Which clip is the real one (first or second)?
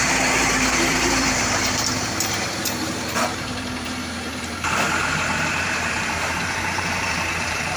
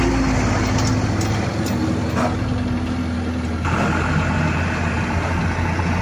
second